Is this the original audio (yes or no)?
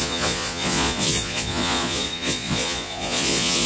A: no